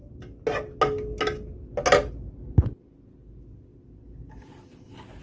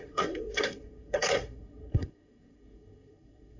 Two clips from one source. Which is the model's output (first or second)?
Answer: second